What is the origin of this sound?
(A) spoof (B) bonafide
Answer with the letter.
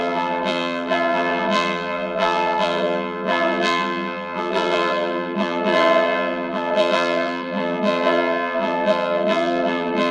A